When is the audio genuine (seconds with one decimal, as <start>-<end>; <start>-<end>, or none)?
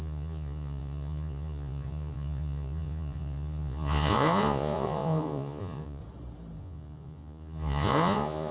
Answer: 6.0-6.6